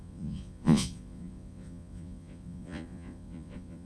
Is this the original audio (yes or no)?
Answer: no